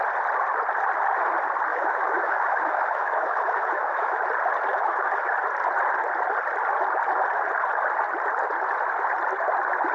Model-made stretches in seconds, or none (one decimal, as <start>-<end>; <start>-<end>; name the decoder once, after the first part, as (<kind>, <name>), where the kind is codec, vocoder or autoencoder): 1.7-4.2 (autoencoder, DAC-VAE); 4.7-5.3